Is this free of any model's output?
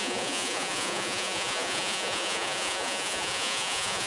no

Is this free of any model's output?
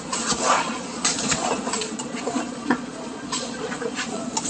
no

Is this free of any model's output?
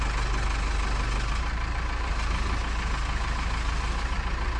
yes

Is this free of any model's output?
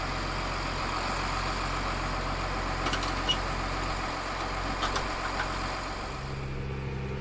yes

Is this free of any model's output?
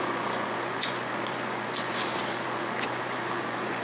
no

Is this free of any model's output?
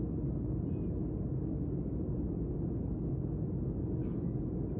yes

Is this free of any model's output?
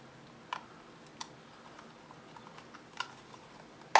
yes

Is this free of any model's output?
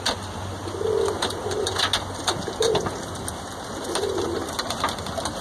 yes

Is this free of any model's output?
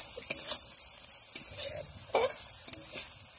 yes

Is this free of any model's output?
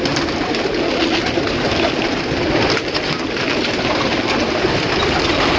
yes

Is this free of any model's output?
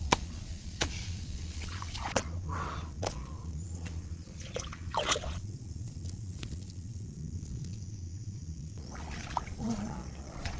no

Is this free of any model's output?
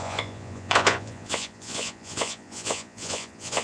no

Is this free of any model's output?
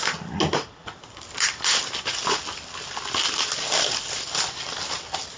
yes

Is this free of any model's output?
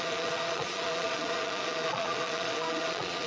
no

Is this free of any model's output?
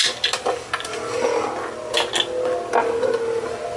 yes